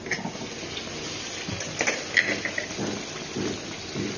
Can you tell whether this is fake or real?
real